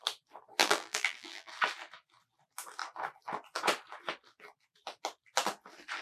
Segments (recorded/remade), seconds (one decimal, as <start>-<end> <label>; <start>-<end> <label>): 0.0-0.6 recorded; 0.6-1.5 remade; 1.5-6.0 recorded